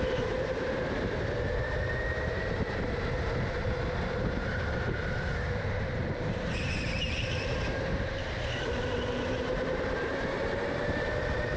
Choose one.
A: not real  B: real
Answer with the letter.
A